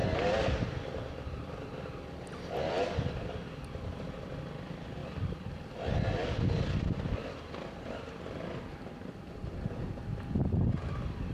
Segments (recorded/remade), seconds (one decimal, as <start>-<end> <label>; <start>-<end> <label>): 0.0-0.6 remade; 0.6-5.0 recorded; 5.0-6.0 remade; 6.0-8.7 recorded; 8.7-10.2 remade; 10.2-11.3 recorded